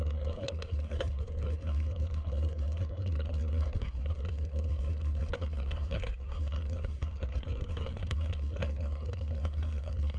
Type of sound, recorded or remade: remade